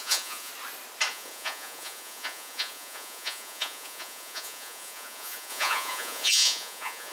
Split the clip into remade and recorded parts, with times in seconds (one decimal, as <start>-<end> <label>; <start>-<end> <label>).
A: 0.0-0.5 remade; 0.5-1.1 recorded; 1.1-7.1 remade